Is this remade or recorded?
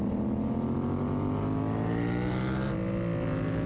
recorded